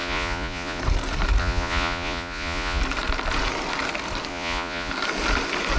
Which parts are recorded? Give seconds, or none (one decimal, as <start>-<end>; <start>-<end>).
0.8-1.4; 2.8-4.3; 4.9-5.8